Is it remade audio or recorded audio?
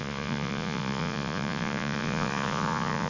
remade